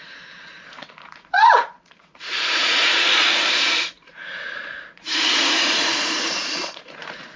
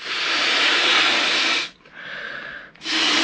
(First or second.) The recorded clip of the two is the second